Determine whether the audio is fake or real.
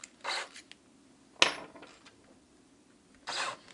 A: real